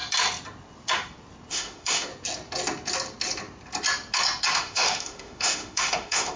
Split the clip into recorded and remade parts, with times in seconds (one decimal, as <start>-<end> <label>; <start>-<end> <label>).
0.0-1.5 recorded; 1.5-2.1 remade; 2.1-4.5 recorded; 4.5-6.4 remade